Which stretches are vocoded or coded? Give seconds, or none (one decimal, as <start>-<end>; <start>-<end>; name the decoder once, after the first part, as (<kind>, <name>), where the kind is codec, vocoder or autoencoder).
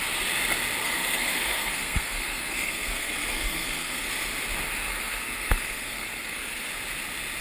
0.8-4.1 (codec, SNAC); 4.9-6.7